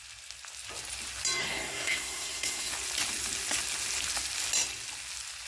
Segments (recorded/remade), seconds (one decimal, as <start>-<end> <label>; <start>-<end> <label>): 0.0-1.4 recorded; 1.4-2.7 remade; 2.7-5.5 recorded